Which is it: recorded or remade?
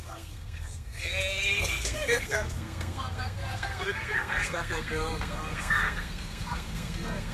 remade